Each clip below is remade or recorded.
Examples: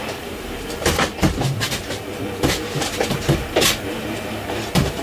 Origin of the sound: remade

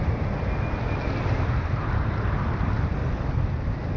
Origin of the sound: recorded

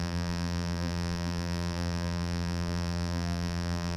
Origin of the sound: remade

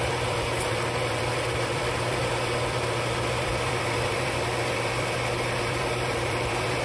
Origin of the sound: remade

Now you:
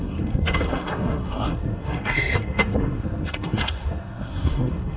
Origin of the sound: remade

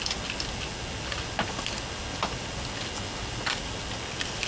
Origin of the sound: recorded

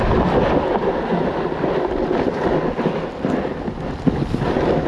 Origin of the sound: recorded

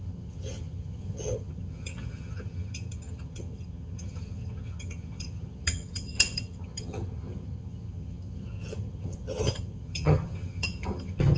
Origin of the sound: remade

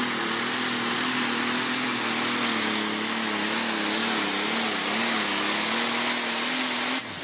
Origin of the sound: recorded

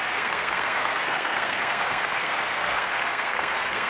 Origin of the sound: remade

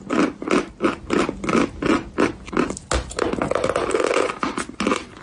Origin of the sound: recorded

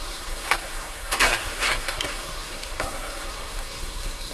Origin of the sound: remade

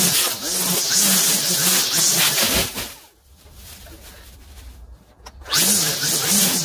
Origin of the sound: recorded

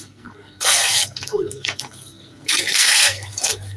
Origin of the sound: remade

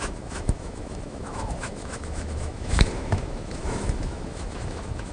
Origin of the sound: remade